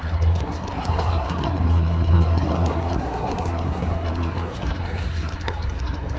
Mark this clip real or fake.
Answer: fake